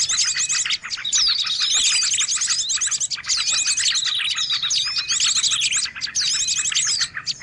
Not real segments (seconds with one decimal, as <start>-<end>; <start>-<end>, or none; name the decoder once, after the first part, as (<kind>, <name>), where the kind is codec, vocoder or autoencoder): none